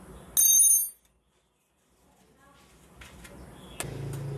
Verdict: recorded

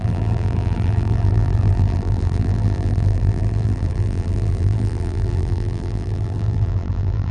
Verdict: remade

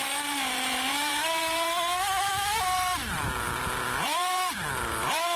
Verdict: remade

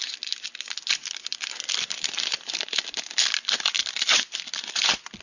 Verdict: remade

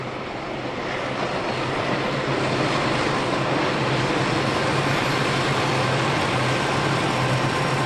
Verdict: recorded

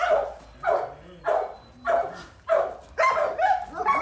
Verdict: recorded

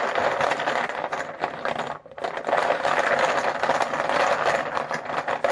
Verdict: recorded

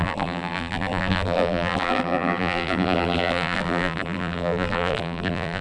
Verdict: remade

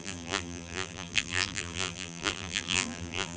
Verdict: remade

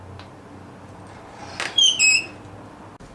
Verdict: recorded